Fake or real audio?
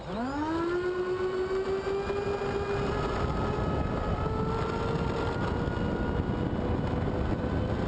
real